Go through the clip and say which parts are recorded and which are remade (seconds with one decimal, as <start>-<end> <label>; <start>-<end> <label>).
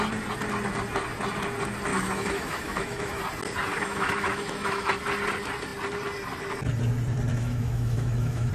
0.0-1.9 recorded; 1.9-3.2 remade; 3.2-3.7 recorded; 3.7-4.9 remade; 4.9-7.3 recorded; 7.3-8.5 remade